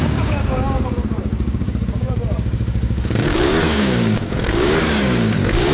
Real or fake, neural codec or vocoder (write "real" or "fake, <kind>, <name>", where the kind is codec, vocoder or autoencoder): fake, codec, DAC